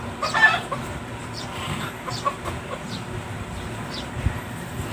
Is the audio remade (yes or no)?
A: yes